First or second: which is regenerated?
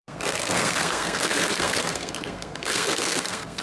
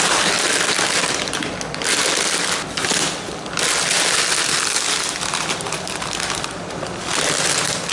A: first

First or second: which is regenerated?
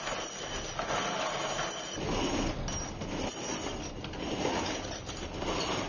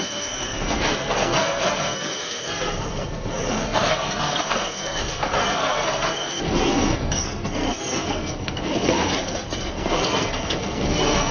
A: second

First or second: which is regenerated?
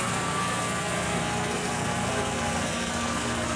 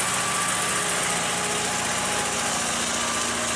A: first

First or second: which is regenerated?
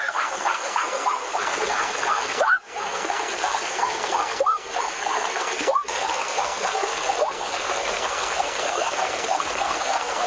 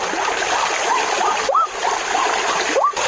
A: first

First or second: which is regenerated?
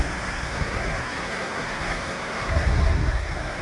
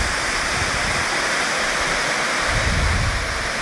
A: first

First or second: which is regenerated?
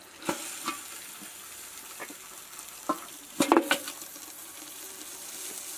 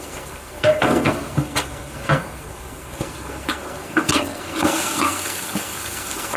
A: second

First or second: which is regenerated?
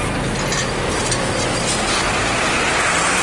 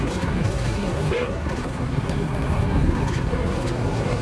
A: second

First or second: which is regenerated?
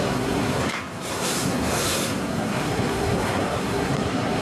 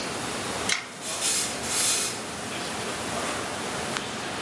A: first